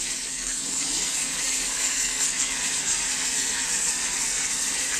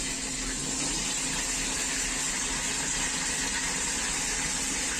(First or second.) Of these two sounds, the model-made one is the first